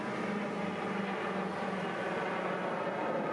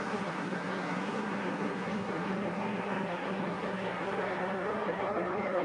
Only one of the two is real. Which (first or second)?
first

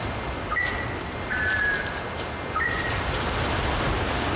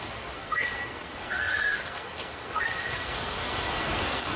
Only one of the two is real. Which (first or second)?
first